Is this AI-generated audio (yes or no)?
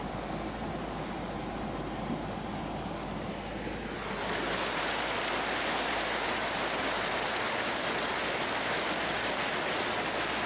no